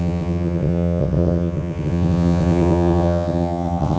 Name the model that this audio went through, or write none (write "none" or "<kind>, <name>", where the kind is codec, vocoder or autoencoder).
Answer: vocoder, WaveNeXt